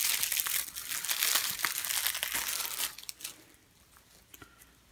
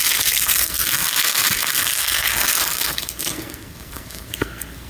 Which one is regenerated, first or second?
second